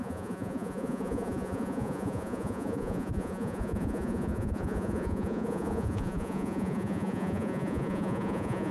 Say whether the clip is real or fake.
fake